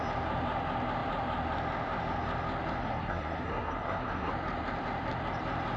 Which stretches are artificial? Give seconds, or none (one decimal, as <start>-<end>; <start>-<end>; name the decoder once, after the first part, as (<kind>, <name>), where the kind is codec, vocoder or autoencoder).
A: 2.8-4.3 (codec, SNAC)